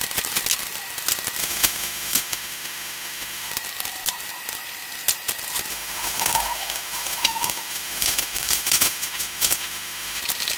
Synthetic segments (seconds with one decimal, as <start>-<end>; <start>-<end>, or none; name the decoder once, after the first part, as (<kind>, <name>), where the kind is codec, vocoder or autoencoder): 1.4-3.5 (autoencoder, DAC-VAE); 5.7-10.2